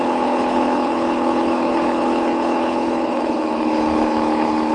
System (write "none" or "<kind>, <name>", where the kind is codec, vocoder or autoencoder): codec, HILCodec